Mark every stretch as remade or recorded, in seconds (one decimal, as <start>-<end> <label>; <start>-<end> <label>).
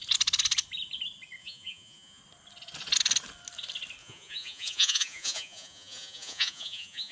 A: 0.0-1.4 recorded; 1.4-2.2 remade; 2.2-4.0 recorded; 4.0-7.1 remade